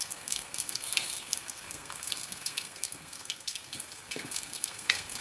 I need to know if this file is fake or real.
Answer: fake